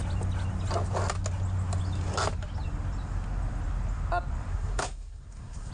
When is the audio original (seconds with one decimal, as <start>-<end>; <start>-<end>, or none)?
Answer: 0.0-4.5